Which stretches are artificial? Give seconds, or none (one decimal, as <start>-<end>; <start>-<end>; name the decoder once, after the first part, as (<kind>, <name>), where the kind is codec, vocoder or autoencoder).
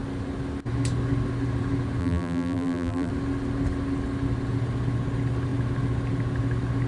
2.0-3.1 (vocoder, BigVGAN v2)